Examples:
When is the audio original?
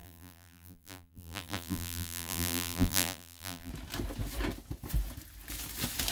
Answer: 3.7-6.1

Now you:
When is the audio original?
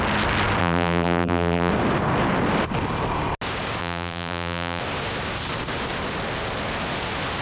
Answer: 0.0-0.6; 1.7-3.8; 4.8-7.4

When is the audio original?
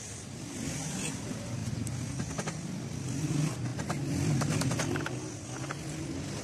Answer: 0.0-6.4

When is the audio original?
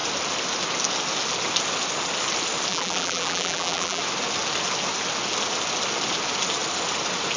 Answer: 0.0-2.7; 4.0-7.4